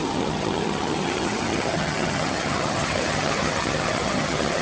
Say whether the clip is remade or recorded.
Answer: remade